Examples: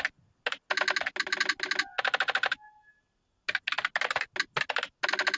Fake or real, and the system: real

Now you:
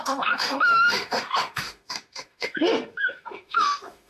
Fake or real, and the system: fake, autoencoder, DAC-VAE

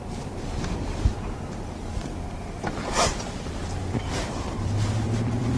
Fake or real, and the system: fake, vocoder, BigVGAN v2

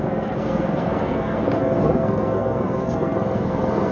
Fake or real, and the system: fake, codec, SNAC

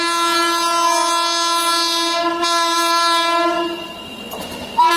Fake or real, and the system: real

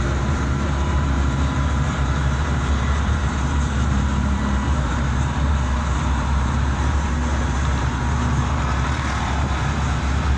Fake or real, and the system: fake, vocoder, BigVGAN v2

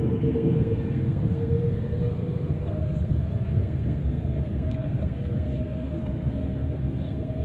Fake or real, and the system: fake, codec, SNAC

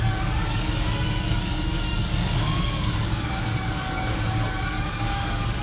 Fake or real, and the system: fake, codec, DAC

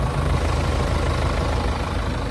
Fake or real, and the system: real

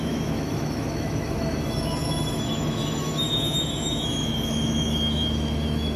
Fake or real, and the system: fake, autoencoder, DAC-VAE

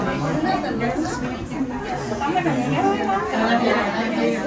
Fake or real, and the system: real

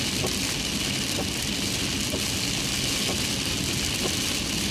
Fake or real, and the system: real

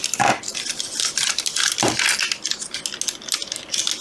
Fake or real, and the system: real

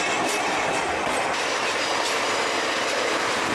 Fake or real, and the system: real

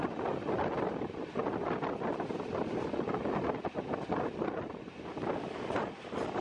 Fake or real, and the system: real